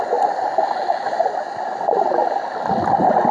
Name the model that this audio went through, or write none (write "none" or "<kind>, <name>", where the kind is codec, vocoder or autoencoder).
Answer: none